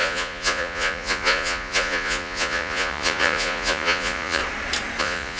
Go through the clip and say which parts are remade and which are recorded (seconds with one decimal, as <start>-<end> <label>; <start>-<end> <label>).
0.0-4.4 remade; 4.4-5.0 recorded; 5.0-5.4 remade